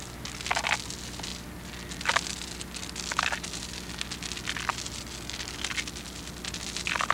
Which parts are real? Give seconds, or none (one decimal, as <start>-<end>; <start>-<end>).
0.0-7.1